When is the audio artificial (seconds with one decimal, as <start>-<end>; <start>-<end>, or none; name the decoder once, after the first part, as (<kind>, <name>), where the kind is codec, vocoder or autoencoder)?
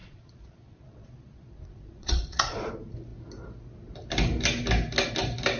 0.0-2.7 (vocoder, Vocos)